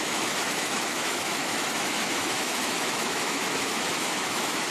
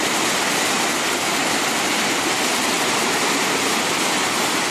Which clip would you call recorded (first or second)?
second